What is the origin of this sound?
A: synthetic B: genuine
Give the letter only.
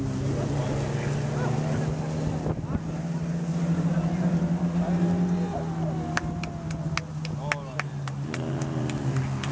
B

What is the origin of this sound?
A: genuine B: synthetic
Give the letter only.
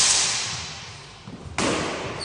A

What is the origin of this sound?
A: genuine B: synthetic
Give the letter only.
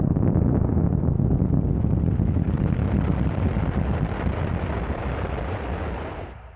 A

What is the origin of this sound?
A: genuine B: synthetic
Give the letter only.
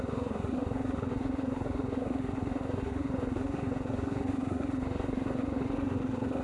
B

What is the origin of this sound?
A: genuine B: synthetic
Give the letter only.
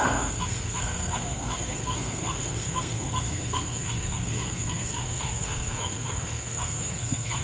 B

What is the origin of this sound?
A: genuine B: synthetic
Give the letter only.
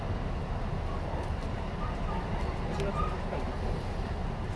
A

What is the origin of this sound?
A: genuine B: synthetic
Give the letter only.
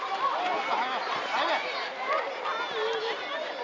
A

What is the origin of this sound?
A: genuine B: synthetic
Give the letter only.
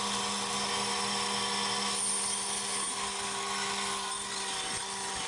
A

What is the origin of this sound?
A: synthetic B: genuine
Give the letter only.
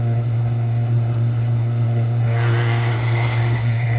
A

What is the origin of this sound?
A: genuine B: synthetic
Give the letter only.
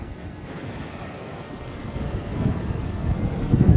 B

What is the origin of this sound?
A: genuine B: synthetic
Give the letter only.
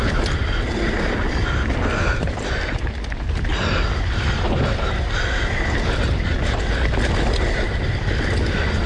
A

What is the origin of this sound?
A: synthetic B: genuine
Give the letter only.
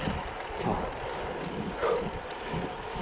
B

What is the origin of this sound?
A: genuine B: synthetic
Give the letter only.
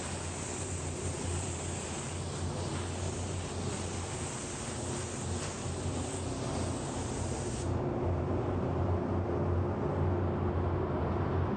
A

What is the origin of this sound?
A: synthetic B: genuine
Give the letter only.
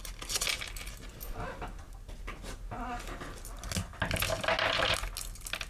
B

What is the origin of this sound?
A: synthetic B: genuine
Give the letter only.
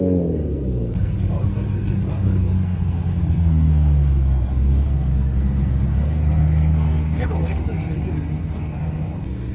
A